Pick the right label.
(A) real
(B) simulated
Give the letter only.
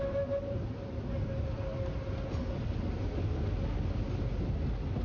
A